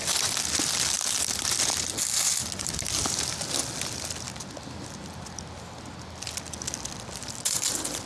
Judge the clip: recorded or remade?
recorded